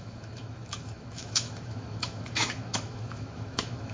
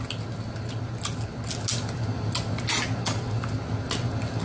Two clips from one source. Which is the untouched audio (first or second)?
second